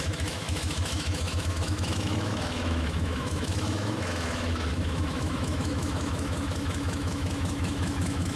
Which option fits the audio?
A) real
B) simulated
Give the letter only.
B